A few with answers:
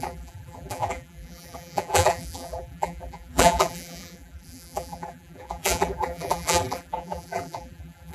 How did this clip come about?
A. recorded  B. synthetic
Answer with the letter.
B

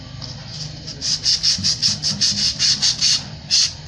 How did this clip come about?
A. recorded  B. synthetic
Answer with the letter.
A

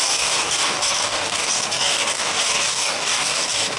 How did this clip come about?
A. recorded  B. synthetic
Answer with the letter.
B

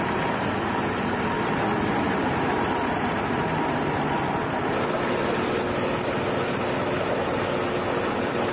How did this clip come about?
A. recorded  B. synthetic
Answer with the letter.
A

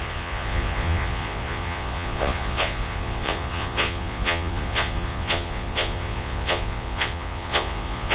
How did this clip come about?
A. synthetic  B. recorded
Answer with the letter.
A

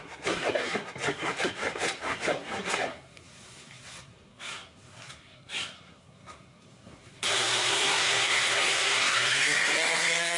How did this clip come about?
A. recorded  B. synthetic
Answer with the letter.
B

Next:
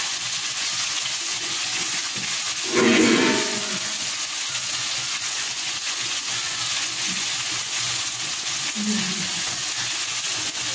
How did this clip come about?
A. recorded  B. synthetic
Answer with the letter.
B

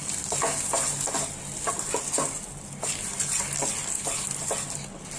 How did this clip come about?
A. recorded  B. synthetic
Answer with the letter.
A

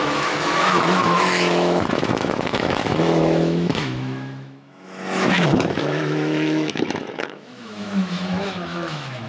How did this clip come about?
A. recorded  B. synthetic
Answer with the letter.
B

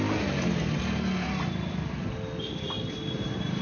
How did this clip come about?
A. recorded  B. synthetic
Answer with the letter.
A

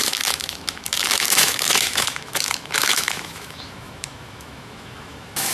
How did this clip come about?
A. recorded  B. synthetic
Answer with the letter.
B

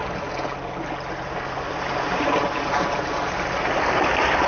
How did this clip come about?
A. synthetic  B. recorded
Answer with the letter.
B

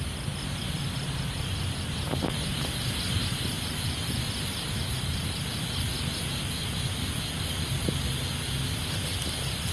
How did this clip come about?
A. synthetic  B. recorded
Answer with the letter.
B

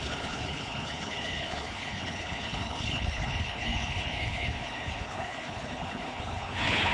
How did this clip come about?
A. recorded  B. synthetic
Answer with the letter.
B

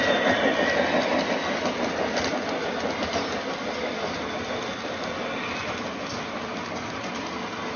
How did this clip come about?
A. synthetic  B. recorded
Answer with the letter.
B